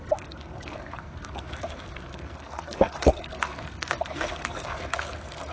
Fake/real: fake